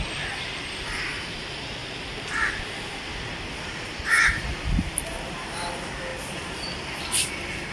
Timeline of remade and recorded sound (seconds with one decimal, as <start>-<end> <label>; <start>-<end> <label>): 0.0-1.8 recorded; 1.8-2.5 remade; 2.5-4.3 recorded; 4.3-5.0 remade; 5.0-7.7 recorded